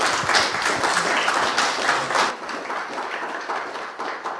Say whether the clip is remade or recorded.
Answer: recorded